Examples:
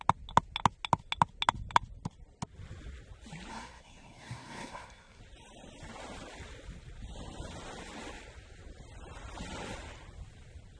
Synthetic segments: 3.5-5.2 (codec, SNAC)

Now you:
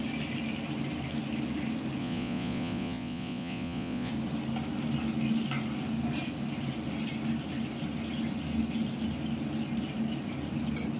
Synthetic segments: 2.0-4.1 (vocoder, Vocos)

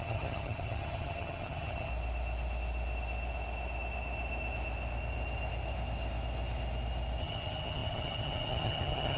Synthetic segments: 0.0-1.9 (vocoder, HiFi-GAN); 7.2-9.2

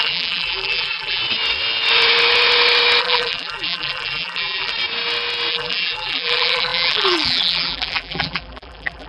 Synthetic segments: 0.0-1.2 (vocoder, BigVGAN v2); 3.0-4.7; 5.5-9.1